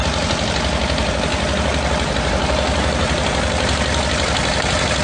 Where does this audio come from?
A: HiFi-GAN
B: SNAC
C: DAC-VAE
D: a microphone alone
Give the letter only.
D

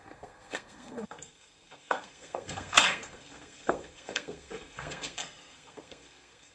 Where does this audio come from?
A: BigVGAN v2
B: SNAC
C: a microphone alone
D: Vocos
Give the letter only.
B